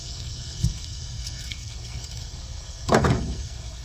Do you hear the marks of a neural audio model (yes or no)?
yes